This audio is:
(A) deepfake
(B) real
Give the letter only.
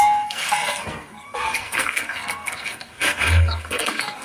A